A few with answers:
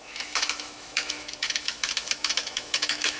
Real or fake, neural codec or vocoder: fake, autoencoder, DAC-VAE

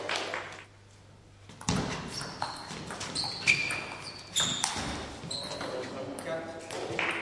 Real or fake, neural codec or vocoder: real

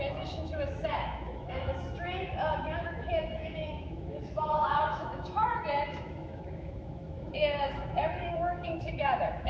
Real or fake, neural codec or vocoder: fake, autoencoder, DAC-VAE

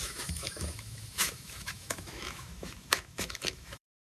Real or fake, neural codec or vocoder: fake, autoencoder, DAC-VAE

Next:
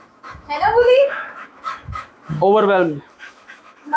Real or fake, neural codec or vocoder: fake, autoencoder, DAC-VAE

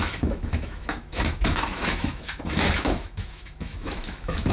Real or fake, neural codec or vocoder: fake, autoencoder, DAC-VAE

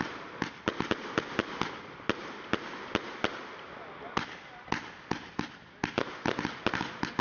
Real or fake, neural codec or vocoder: real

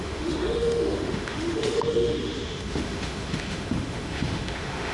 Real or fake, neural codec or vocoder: fake, autoencoder, DAC-VAE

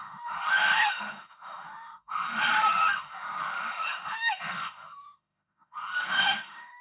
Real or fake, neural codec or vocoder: fake, autoencoder, DAC-VAE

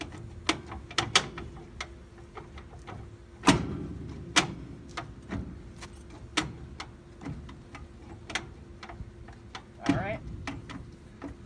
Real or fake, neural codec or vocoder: real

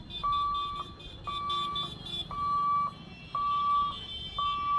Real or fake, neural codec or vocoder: real